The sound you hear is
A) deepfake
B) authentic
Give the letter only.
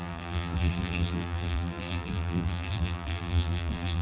A